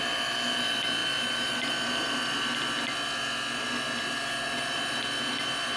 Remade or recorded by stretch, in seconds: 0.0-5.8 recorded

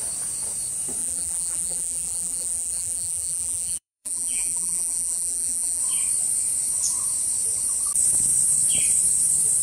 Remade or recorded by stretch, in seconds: 0.0-1.0 recorded; 1.0-5.8 remade; 5.8-9.6 recorded